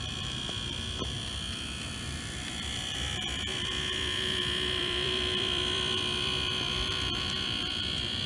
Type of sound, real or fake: fake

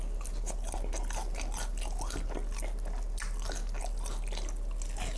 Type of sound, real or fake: real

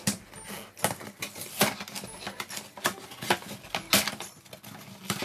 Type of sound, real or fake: real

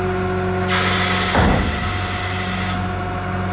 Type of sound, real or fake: real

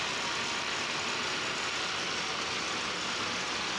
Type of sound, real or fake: real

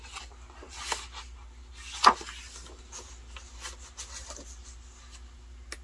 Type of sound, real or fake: real